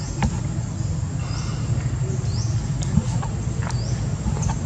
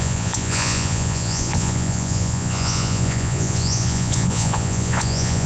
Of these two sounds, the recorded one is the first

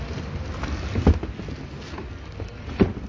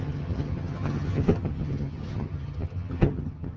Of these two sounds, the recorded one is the first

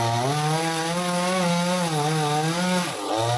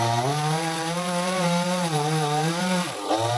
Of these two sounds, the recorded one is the first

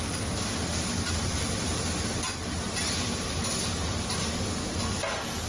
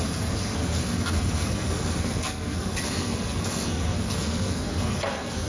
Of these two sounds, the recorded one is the first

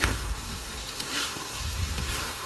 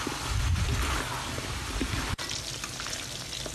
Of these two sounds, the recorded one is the second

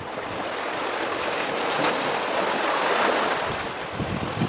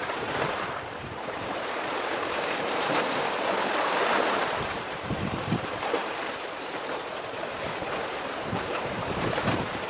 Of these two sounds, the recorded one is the first